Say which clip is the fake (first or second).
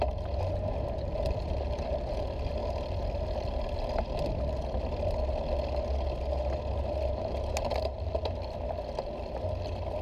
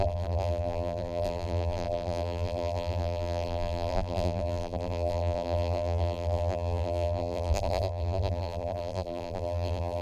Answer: second